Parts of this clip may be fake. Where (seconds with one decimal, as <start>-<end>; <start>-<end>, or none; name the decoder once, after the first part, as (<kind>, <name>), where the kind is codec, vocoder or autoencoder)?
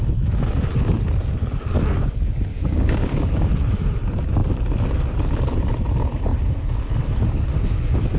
2.5-3.5 (codec, DAC)